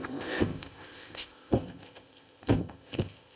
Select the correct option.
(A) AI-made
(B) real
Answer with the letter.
A